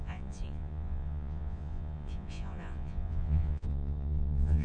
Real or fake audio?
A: fake